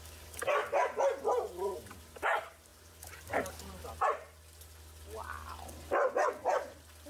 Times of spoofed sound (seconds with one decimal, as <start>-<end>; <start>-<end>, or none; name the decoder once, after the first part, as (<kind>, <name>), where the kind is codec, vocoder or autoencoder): 2.7-3.9 (vocoder, BigVGAN v2)